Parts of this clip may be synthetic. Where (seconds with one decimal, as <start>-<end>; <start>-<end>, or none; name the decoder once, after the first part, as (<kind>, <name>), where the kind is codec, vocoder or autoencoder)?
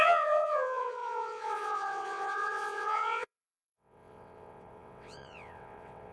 0.0-6.1 (vocoder, WaveNeXt)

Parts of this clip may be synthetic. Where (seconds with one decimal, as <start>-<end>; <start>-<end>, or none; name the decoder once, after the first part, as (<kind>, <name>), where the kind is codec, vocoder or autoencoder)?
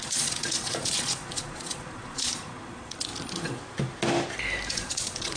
0.0-3.1 (vocoder, Vocos); 4.7-5.4